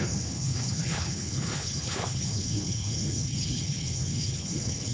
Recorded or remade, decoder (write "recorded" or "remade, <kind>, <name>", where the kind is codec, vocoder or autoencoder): remade, codec, HILCodec